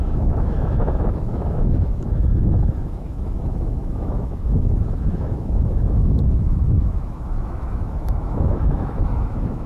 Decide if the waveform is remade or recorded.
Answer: remade